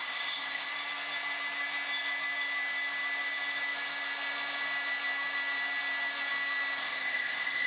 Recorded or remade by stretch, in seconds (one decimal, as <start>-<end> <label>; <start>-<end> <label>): 0.0-0.7 remade; 0.7-6.8 recorded; 6.8-7.7 remade